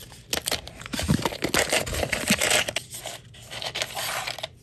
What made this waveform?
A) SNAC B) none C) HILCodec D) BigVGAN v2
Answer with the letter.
B